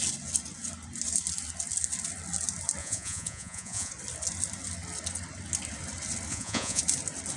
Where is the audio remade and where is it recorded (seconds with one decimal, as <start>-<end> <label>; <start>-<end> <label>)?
0.0-2.8 recorded; 2.8-3.9 remade; 3.9-6.3 recorded; 6.3-6.8 remade; 6.8-7.4 recorded

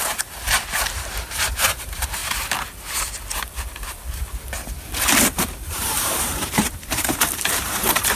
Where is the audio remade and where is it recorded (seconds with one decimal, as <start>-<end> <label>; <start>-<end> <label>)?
0.0-2.2 remade; 2.2-5.7 recorded; 5.7-8.2 remade

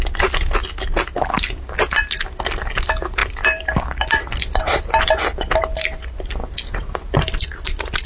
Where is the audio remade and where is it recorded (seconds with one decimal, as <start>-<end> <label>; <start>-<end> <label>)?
0.0-3.2 recorded; 3.2-4.2 remade; 4.2-4.7 recorded; 4.7-7.5 remade; 7.5-8.1 recorded

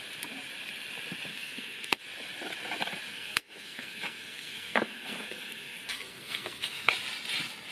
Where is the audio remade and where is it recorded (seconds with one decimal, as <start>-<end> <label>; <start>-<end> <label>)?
0.0-1.3 recorded; 1.3-2.0 remade; 2.0-3.1 recorded; 3.1-6.9 remade; 6.9-7.7 recorded

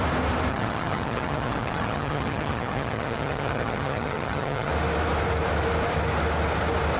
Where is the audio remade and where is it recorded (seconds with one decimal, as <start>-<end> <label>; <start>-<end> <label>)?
0.0-0.5 recorded; 0.5-4.7 remade; 4.7-7.0 recorded

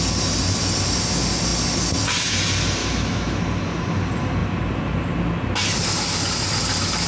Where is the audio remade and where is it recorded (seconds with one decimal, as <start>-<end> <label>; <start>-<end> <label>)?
0.0-2.8 recorded; 2.8-3.4 remade; 3.4-7.1 recorded